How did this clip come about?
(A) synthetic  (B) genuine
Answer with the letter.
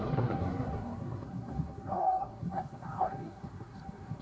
A